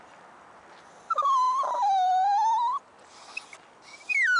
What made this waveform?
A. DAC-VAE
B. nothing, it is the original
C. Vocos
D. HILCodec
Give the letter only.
B